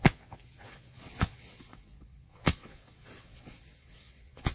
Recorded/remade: remade